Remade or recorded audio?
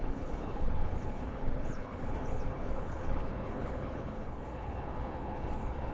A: remade